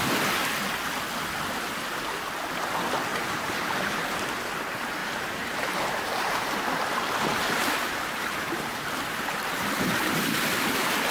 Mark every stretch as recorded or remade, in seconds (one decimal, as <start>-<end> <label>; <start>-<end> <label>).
0.0-3.1 recorded; 3.1-4.5 remade; 4.5-5.0 recorded; 5.0-9.5 remade; 9.5-11.1 recorded